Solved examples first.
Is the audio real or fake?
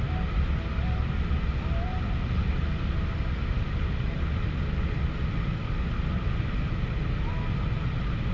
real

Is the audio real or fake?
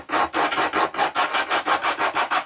real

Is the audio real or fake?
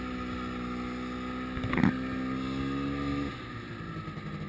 real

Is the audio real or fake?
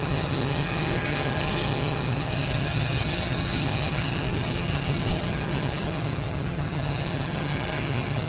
fake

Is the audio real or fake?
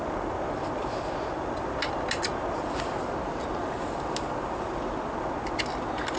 real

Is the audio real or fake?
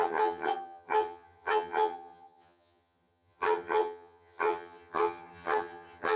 fake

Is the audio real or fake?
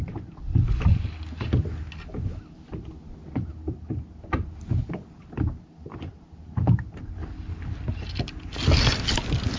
real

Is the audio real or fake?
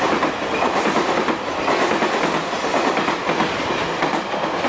real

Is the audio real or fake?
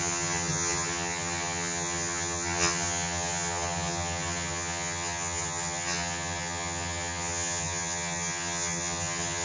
fake